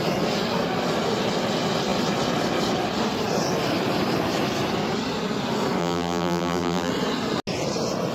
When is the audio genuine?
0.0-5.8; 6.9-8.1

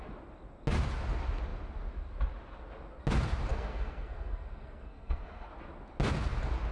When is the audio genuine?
0.0-3.5; 5.5-6.7

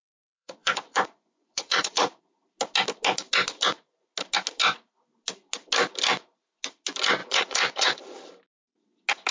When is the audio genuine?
2.2-7.2; 8.0-9.3

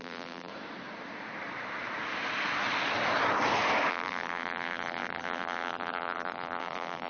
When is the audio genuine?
0.5-3.9

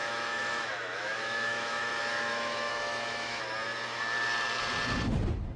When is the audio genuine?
3.4-5.6